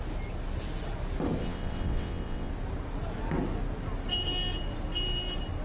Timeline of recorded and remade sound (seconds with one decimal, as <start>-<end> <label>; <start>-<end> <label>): 0.0-1.4 recorded; 1.4-2.5 remade; 2.5-5.6 recorded